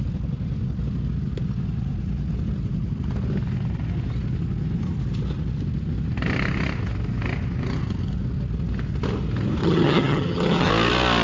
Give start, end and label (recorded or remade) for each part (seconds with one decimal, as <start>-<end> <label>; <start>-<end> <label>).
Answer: 0.0-9.6 recorded; 9.6-10.7 remade; 10.7-11.2 recorded